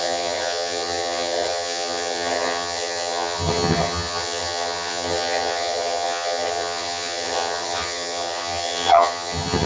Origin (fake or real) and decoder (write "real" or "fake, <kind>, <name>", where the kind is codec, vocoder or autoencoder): fake, vocoder, HiFi-GAN